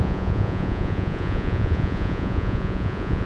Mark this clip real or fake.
fake